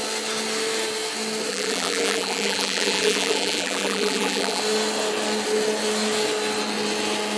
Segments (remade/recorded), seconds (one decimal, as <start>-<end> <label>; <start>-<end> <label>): 0.0-1.5 recorded; 1.5-4.6 remade; 4.6-7.4 recorded